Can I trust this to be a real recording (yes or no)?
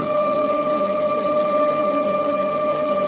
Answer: no